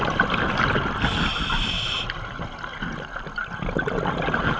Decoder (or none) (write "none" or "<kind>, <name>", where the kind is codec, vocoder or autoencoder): none